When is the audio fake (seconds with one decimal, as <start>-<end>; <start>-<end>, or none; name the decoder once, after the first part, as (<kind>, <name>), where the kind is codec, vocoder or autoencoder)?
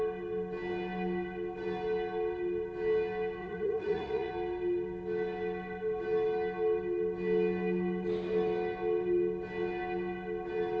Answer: 3.4-4.3 (vocoder, Vocos)